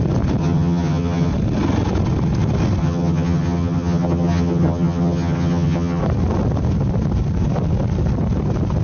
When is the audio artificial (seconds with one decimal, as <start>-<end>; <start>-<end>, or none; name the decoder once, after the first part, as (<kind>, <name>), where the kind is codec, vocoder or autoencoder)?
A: 0.4-1.3 (vocoder, HiFi-GAN); 2.8-6.0